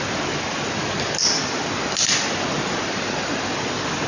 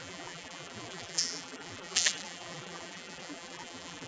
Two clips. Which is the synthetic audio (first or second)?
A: second